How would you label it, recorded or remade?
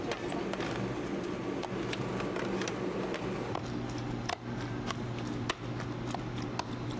recorded